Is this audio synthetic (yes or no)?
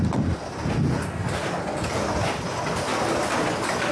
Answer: no